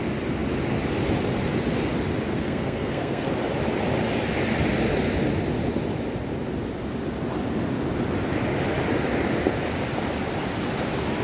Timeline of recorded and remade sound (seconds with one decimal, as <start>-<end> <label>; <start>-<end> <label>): 0.0-2.3 recorded; 2.3-3.3 remade; 3.3-11.2 recorded